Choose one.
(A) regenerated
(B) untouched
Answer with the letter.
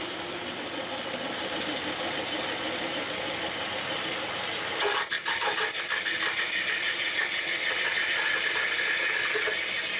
B